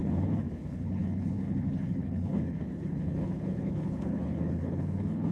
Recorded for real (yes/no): no